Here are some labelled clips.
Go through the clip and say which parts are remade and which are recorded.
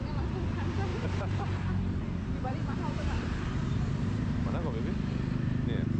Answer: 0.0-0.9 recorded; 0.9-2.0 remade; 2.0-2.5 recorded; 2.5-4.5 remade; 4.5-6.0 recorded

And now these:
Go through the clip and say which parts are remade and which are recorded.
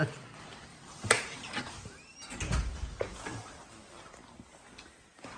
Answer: 0.0-0.7 recorded; 0.7-1.6 remade; 1.6-5.4 recorded